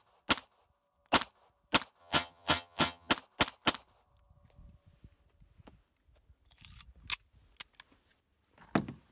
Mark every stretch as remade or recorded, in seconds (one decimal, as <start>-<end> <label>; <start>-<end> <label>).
0.0-2.0 recorded; 2.0-3.1 remade; 3.1-9.1 recorded